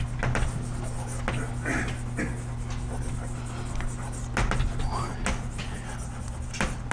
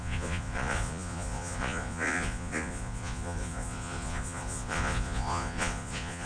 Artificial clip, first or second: second